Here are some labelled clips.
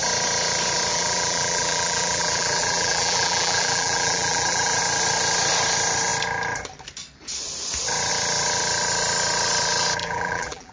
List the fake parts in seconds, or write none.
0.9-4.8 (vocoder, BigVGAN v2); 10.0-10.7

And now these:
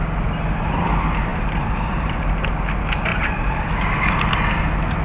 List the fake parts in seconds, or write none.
1.3-2.2 (vocoder, BigVGAN v2); 3.1-3.6